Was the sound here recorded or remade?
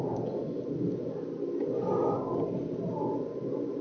recorded